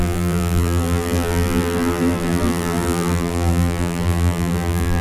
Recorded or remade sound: remade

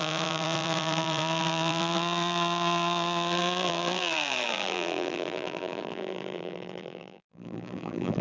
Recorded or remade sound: remade